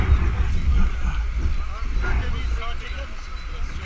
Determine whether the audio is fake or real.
real